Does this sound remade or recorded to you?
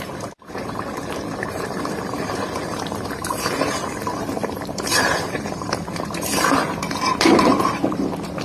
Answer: remade